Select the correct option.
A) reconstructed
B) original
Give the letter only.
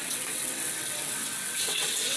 A